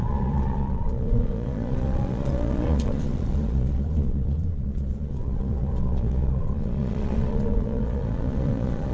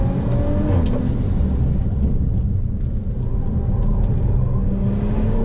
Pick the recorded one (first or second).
second